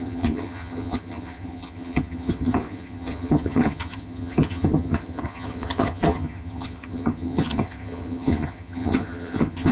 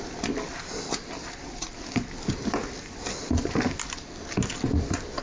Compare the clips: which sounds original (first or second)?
second